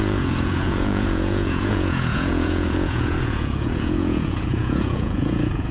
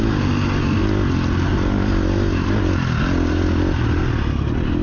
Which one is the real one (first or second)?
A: second